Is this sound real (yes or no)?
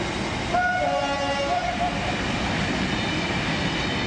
yes